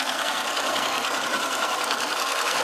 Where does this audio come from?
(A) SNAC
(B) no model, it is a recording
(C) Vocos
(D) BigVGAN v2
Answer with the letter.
A